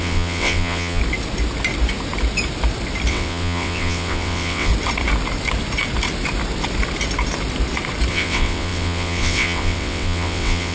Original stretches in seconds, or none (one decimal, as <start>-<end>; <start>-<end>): 1.0-3.1; 4.7-8.1